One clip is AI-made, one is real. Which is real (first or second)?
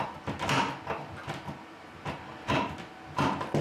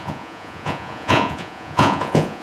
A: first